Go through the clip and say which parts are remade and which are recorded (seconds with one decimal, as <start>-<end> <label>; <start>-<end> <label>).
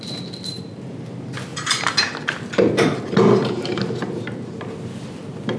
0.0-5.6 recorded